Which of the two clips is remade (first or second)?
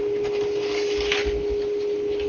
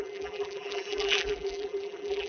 second